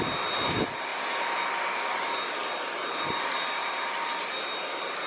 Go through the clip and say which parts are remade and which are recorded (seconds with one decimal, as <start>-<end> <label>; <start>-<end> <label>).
0.0-5.1 recorded